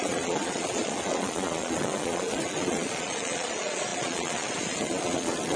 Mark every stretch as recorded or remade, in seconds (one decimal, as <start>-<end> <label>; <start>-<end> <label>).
0.0-5.6 remade